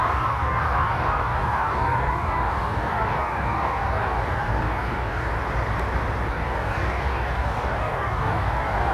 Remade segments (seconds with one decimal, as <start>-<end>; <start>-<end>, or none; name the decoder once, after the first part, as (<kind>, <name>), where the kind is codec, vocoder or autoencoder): 0.0-5.3 (codec, DAC); 6.3-8.9